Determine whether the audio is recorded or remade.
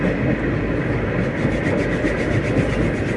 recorded